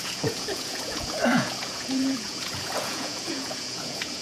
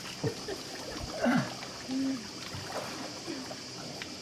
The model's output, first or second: first